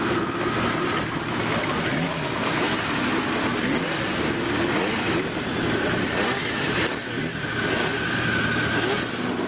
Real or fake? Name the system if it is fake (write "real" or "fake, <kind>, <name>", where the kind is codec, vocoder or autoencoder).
real